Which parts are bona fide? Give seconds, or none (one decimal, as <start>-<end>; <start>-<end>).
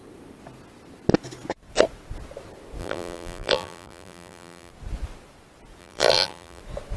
0.0-2.8; 4.7-5.8; 6.6-7.0